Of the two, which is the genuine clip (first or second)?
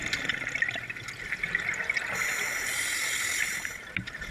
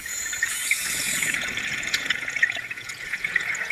first